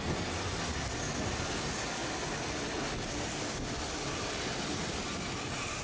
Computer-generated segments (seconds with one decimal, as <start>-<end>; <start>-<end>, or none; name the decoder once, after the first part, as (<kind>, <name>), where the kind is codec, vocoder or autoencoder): none